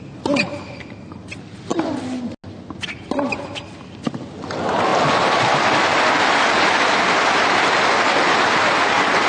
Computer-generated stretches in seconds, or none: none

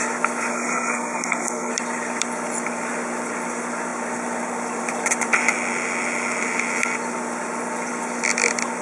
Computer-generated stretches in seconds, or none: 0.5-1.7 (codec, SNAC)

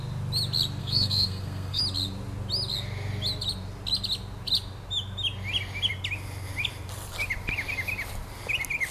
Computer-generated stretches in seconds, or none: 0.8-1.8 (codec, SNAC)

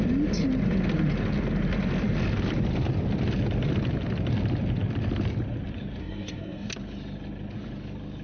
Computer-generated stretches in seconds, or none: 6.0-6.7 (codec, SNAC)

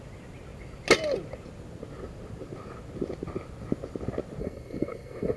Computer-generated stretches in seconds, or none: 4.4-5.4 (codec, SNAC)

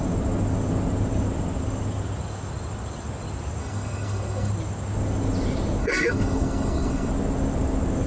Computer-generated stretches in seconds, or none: 3.6-4.5 (codec, SNAC); 5.8-7.1

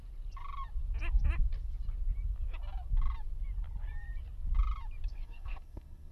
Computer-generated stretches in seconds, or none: 5.1-6.1 (codec, SNAC)

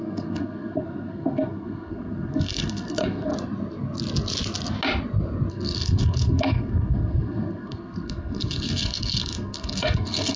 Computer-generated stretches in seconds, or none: 0.0-3.3 (codec, SNAC); 5.5-10.4